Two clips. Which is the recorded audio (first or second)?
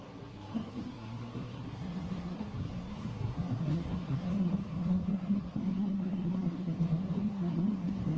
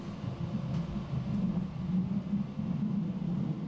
second